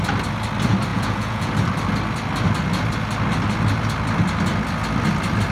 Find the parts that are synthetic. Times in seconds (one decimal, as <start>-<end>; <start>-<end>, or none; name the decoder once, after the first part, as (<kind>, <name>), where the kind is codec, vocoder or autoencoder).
0.9-1.5 (vocoder, Vocos)